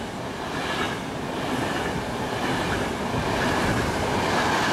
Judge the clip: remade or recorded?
recorded